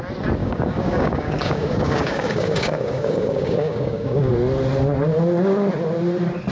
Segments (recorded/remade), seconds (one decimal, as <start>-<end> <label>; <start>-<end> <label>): 0.0-0.4 recorded; 0.4-4.3 remade; 4.3-6.5 recorded